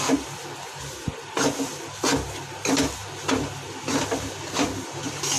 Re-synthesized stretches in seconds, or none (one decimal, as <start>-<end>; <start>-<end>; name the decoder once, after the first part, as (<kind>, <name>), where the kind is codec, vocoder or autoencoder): none